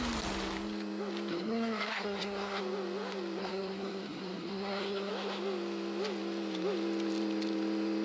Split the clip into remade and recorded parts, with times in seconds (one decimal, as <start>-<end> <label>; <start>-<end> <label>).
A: 0.0-1.3 recorded; 1.3-2.6 remade; 2.6-3.4 recorded; 3.4-5.1 remade; 5.1-8.0 recorded